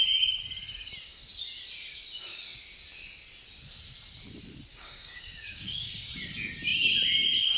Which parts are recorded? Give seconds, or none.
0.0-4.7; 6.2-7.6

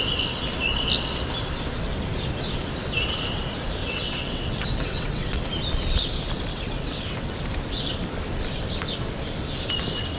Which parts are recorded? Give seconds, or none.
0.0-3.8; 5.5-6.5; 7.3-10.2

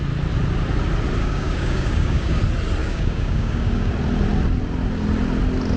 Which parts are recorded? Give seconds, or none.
0.0-1.2; 2.4-2.8; 3.9-5.8

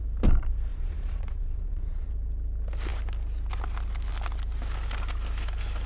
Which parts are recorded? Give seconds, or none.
0.0-0.7; 2.1-5.9